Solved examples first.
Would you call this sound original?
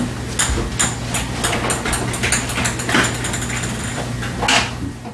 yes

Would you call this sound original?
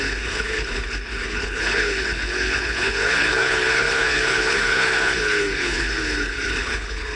no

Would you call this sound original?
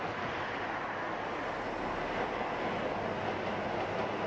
yes